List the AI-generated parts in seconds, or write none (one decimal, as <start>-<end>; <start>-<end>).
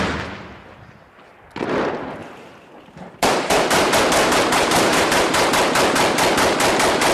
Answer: 2.2-4.0; 4.6-5.5